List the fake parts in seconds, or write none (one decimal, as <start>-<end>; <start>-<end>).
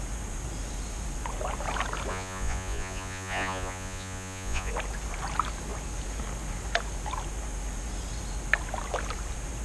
2.1-4.7